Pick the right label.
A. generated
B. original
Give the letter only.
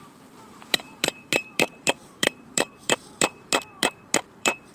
A